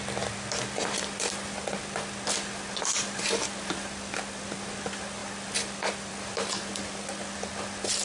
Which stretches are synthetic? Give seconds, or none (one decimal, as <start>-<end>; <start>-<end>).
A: none